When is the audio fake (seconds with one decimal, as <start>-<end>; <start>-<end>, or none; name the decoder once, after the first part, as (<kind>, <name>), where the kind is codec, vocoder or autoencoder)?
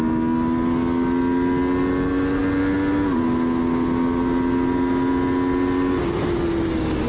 none